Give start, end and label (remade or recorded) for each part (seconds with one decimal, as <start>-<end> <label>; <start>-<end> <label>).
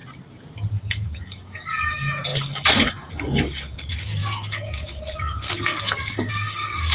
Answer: 0.0-0.7 recorded; 0.7-6.9 remade